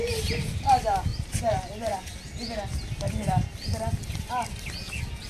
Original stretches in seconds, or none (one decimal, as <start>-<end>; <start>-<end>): 0.0-5.3